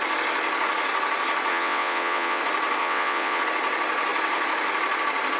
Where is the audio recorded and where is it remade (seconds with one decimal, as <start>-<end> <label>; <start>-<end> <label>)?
0.0-1.5 recorded; 1.5-2.4 remade; 2.4-2.8 recorded; 2.8-3.4 remade; 3.4-5.4 recorded